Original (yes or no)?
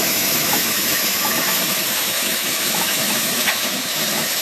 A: no